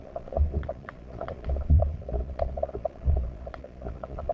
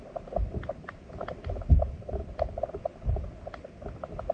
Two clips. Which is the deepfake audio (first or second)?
first